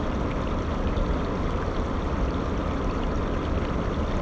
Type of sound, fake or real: real